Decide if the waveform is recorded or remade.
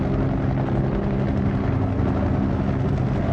recorded